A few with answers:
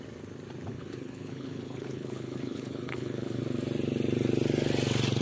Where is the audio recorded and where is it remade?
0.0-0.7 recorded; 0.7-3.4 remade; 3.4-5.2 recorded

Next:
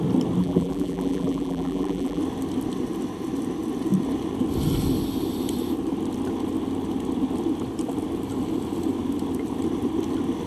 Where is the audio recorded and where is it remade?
0.0-0.4 recorded; 0.4-2.2 remade; 2.2-10.5 recorded

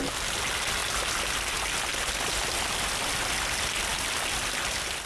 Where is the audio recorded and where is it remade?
0.0-1.9 recorded; 1.9-2.4 remade; 2.4-5.1 recorded

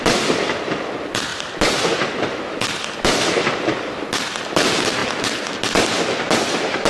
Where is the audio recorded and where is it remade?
0.0-6.9 recorded

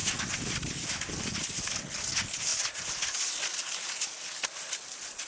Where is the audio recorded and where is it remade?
0.0-5.3 recorded

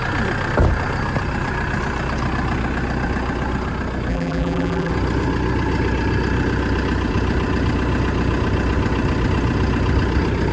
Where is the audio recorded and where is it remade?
0.0-4.1 recorded; 4.1-4.9 remade; 4.9-10.5 recorded